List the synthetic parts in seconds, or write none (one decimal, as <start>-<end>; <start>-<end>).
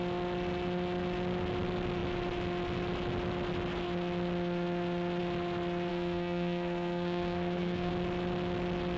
5.9-7.9